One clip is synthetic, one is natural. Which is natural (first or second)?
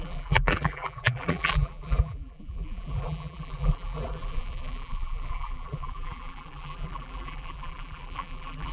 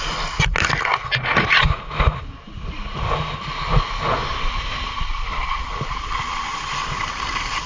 second